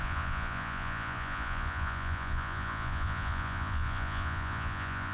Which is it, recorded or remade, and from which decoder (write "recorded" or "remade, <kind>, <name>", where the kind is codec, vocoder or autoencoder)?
remade, vocoder, Vocos